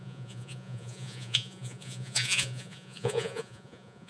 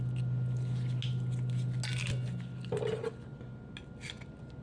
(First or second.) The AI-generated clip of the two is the first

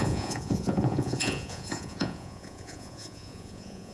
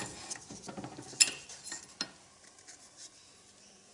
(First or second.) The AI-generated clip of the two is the first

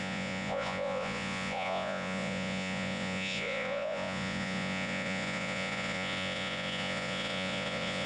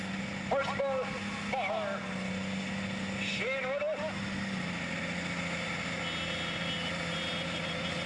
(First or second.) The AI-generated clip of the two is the first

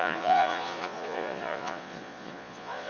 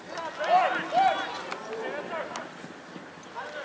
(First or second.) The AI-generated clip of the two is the first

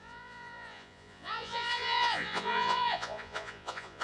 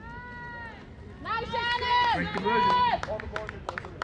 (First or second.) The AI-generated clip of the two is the first